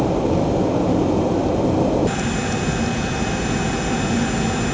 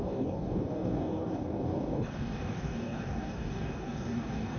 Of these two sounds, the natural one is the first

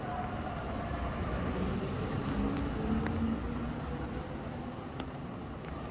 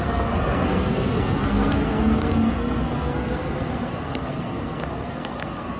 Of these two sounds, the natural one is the first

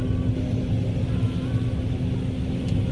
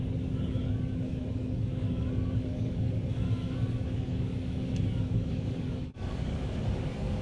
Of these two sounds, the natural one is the first